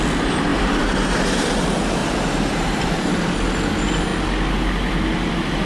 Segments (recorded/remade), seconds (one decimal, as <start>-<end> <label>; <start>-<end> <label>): 0.0-0.5 recorded; 0.5-1.4 remade; 1.4-2.0 recorded; 2.0-3.1 remade; 3.1-5.7 recorded